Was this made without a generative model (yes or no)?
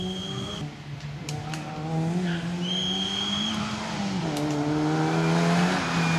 yes